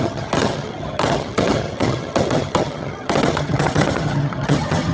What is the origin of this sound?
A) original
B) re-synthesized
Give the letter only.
B